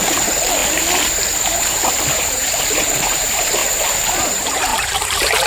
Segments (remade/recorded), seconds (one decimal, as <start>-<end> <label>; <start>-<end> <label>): 0.0-0.6 remade; 0.6-2.1 recorded; 2.1-3.6 remade; 3.6-4.2 recorded; 4.2-5.5 remade